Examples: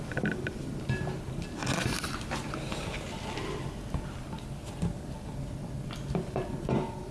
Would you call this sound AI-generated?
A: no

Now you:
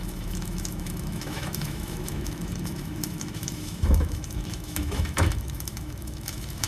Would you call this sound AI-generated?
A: yes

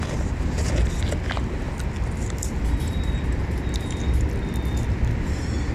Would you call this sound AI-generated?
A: no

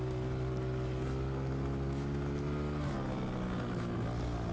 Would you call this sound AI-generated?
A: no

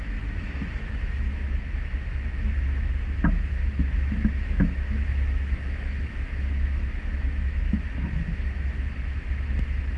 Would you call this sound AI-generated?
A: yes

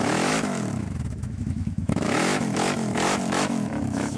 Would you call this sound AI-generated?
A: yes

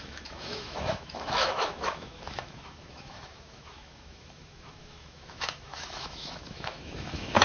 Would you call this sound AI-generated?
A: yes